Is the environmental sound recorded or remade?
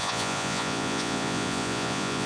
remade